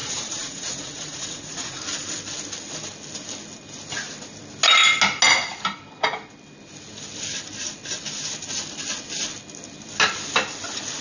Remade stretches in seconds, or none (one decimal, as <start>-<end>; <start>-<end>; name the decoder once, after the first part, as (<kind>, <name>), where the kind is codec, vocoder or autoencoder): 0.0-1.8 (vocoder, Vocos)